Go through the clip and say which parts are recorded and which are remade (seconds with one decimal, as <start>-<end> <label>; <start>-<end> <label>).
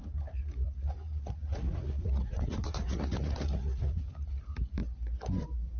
0.0-4.8 remade; 4.8-5.8 recorded